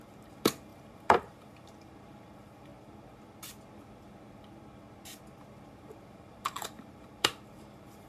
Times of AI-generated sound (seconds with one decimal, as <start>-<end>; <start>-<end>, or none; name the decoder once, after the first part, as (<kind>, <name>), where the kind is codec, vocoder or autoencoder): 0.0-2.7 (vocoder, BigVGAN v2); 5.8-8.1